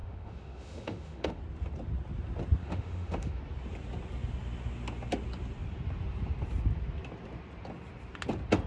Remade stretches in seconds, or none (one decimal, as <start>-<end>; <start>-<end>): 0.0-1.4; 2.6-3.4